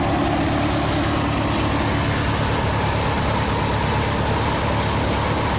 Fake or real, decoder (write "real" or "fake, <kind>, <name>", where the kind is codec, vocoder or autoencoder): real